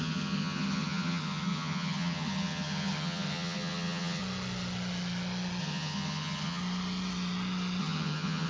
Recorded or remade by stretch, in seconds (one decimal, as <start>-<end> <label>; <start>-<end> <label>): 0.0-4.2 remade; 4.2-5.6 recorded; 5.6-6.6 remade; 6.6-7.8 recorded; 7.8-8.5 remade